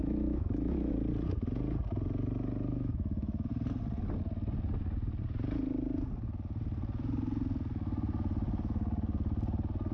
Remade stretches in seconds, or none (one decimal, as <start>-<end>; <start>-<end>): 0.0-0.9; 2.7-3.5